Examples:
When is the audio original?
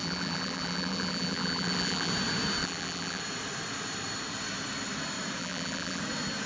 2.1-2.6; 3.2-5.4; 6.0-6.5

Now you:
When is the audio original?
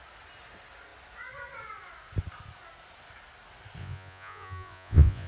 0.0-3.8